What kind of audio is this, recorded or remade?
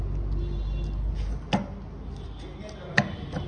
recorded